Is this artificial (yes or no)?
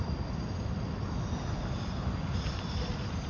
no